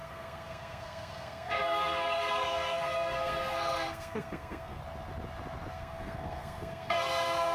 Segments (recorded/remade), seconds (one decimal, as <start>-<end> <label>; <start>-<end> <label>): 0.0-4.8 remade; 4.8-5.7 recorded; 5.7-7.5 remade

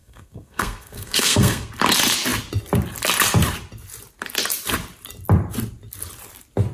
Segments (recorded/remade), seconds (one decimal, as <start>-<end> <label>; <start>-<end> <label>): 0.0-1.7 remade; 1.7-6.7 recorded

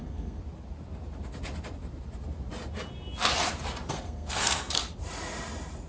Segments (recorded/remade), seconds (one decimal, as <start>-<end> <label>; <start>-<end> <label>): 0.0-0.4 remade; 0.4-3.9 recorded; 3.9-4.8 remade; 4.8-5.9 recorded

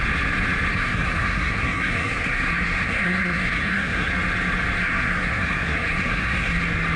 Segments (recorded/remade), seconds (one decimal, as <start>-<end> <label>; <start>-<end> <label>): 0.0-0.7 recorded; 0.7-4.1 remade; 4.1-4.8 recorded; 4.8-6.6 remade; 6.6-7.0 recorded

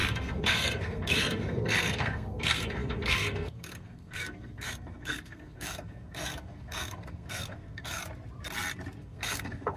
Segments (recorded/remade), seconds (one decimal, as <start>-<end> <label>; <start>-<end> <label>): 0.0-8.0 remade; 8.0-9.0 recorded; 9.0-9.8 remade

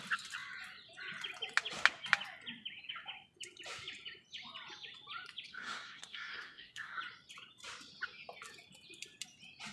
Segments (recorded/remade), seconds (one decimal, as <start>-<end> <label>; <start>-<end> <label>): 0.0-5.5 recorded; 5.5-7.0 remade; 7.0-9.7 recorded

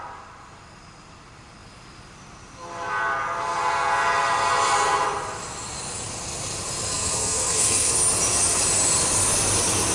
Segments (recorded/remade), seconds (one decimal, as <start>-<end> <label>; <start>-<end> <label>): 0.0-6.9 recorded; 6.9-7.9 remade; 7.9-9.9 recorded

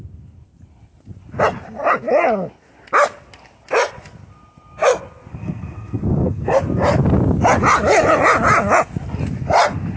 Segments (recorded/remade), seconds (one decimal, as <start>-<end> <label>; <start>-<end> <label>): 0.0-5.3 recorded; 5.3-6.6 remade; 6.6-10.0 recorded